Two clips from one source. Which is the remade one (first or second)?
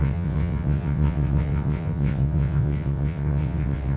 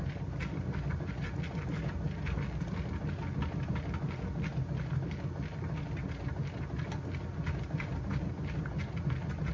first